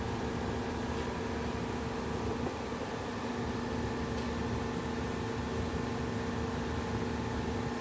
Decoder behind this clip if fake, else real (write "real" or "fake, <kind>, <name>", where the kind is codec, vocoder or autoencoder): real